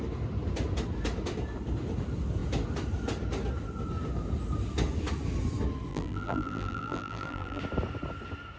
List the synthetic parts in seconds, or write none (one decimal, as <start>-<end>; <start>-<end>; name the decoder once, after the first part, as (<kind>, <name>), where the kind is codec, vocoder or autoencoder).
5.9-7.6 (vocoder, BigVGAN v2)